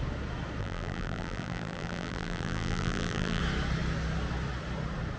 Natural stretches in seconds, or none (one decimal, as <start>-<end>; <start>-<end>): 0.0-0.6; 3.4-5.2